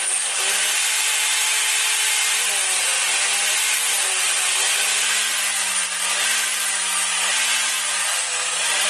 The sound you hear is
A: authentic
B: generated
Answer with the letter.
A